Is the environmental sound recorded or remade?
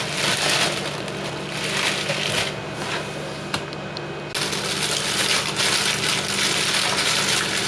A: recorded